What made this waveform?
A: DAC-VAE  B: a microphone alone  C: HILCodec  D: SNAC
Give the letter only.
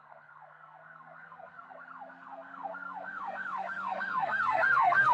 D